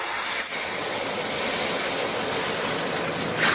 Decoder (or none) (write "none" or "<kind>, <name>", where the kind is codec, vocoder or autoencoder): none